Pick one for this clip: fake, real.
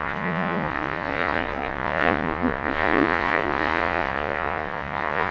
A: fake